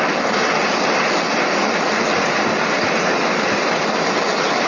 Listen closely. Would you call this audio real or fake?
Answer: real